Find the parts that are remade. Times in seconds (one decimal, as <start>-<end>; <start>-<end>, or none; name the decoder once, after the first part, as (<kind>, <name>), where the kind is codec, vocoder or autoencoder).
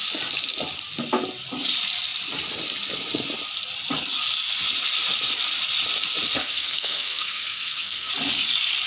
6.4-8.1 (codec, SNAC)